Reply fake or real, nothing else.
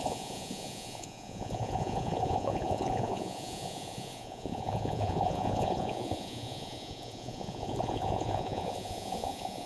fake